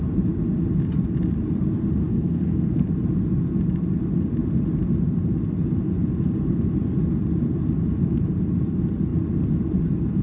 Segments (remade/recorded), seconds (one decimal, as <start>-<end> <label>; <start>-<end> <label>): 0.0-2.1 recorded; 2.1-2.8 remade; 2.8-10.2 recorded